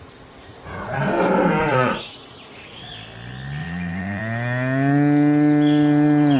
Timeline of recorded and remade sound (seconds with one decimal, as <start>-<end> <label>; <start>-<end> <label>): 0.0-0.5 recorded; 0.5-1.0 remade; 1.0-1.7 recorded; 1.7-2.9 remade; 2.9-3.6 recorded; 3.6-4.2 remade; 4.2-6.4 recorded